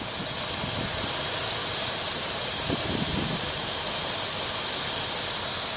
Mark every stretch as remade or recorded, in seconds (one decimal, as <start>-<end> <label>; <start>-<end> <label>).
0.0-1.6 recorded; 1.6-5.1 remade; 5.1-5.8 recorded